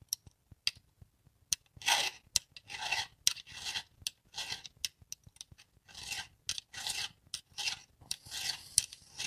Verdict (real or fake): real